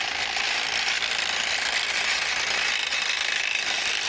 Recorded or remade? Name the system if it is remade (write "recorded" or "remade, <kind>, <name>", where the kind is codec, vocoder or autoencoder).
recorded